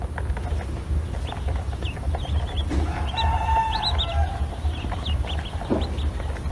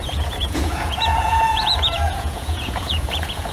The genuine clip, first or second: first